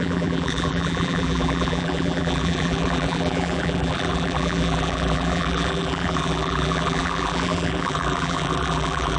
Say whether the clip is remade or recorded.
remade